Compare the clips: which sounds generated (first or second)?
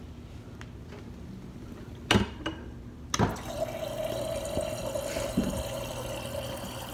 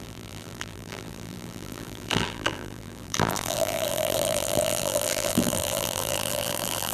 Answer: second